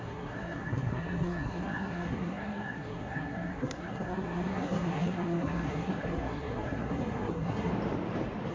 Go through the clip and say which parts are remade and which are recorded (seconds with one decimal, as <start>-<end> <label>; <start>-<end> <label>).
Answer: 0.0-7.7 remade; 7.7-8.5 recorded